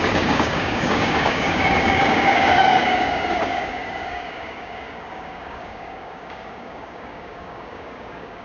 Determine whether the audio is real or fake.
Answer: fake